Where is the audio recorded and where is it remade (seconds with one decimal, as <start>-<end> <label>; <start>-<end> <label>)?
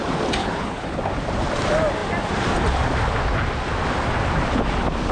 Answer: 0.0-0.4 recorded; 0.4-1.0 remade; 1.0-5.1 recorded